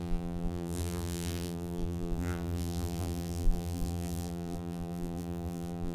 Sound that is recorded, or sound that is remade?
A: remade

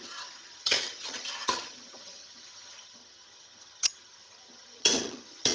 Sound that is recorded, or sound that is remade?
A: remade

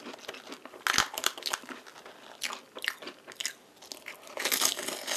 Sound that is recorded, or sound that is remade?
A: recorded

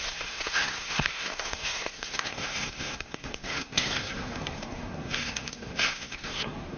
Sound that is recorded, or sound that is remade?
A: remade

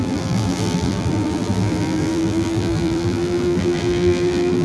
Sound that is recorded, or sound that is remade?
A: remade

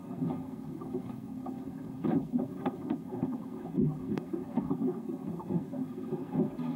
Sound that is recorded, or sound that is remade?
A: remade